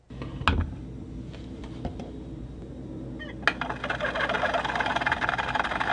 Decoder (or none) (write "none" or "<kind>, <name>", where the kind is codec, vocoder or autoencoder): none